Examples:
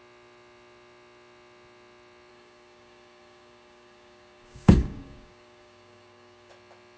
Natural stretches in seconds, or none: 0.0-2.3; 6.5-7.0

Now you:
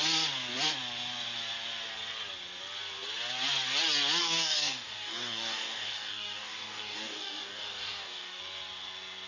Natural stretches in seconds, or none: 0.0-4.2; 8.4-9.3

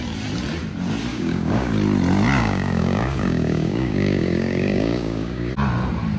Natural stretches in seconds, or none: 0.0-1.1; 1.7-2.4; 5.5-6.2

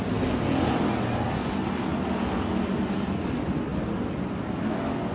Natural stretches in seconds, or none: 0.0-5.1

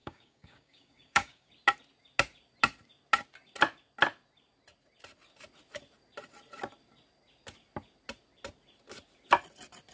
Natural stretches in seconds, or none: 1.5-9.9

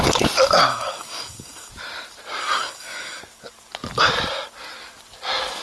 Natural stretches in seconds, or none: 0.0-0.7; 1.7-2.4; 3.2-5.6

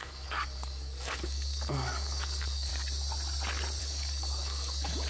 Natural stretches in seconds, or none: 2.7-3.8

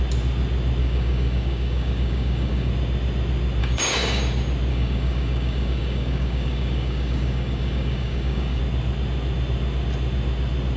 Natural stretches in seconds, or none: 0.0-0.8; 2.7-3.6; 4.2-4.7; 8.6-10.8